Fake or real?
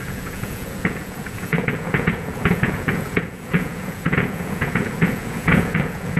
fake